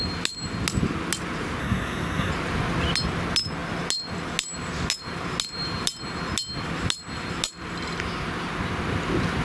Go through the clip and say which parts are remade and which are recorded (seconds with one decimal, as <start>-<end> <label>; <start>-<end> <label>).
0.0-1.6 recorded; 1.6-2.3 remade; 2.3-9.4 recorded